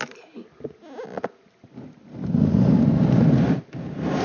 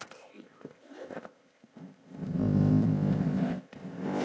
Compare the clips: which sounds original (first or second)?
first